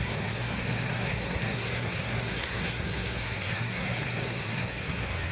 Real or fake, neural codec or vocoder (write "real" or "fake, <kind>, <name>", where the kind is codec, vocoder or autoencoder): fake, codec, SNAC